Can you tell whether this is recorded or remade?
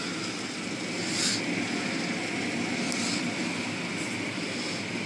recorded